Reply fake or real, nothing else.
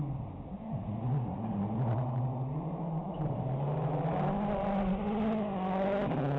real